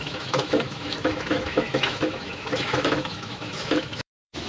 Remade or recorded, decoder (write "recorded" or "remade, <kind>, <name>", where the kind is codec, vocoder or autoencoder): remade, autoencoder, DAC-VAE